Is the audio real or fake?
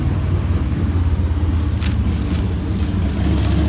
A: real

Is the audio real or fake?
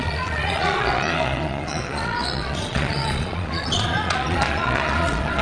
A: fake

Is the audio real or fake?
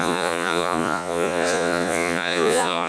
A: fake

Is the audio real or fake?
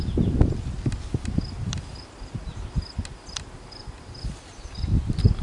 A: real